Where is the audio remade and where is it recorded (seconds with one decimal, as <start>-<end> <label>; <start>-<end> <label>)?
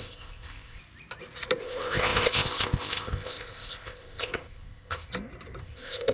0.0-0.8 remade; 0.8-1.6 recorded; 1.6-5.1 remade; 5.1-5.6 recorded; 5.6-6.1 remade